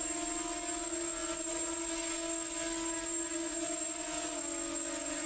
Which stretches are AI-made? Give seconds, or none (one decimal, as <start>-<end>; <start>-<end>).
none